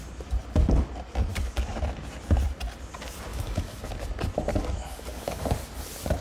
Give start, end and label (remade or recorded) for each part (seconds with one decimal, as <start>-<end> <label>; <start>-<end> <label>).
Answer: 0.0-1.3 recorded; 1.3-1.8 remade; 1.8-3.3 recorded; 3.3-3.9 remade; 3.9-4.5 recorded; 4.5-5.5 remade; 5.5-6.2 recorded